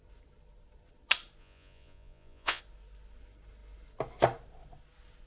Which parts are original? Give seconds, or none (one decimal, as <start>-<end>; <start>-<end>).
0.0-1.4; 2.6-5.3